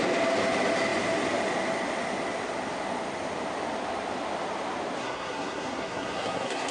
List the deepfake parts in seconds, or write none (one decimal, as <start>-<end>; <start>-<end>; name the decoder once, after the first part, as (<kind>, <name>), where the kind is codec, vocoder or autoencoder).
5.0-6.7 (codec, SNAC)